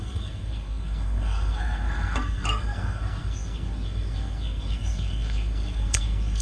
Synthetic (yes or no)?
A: yes